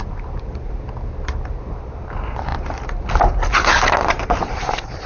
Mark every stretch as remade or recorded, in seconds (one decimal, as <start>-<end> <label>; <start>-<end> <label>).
0.0-0.5 remade; 0.5-1.5 recorded; 1.5-2.5 remade; 2.5-4.1 recorded; 4.1-5.1 remade